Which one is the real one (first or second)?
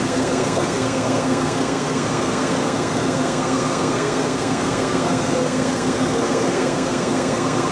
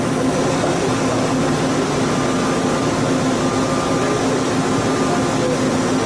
second